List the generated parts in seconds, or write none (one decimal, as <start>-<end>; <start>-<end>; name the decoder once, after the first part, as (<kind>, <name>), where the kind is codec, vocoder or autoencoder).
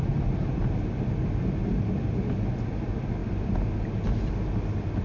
none